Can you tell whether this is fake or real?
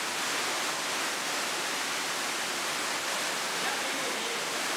real